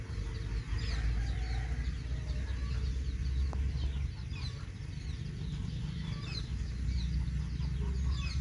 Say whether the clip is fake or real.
real